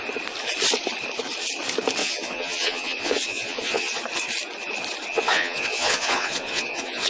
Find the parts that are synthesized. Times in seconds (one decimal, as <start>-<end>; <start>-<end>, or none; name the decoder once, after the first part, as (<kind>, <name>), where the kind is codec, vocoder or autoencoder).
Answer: 2.0-4.0 (vocoder, Vocos); 5.1-7.1